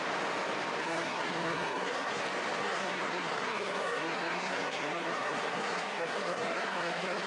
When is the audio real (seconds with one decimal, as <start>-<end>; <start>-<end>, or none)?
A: 0.0-0.8; 2.2-2.6